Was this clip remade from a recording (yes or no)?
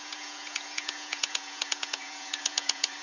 yes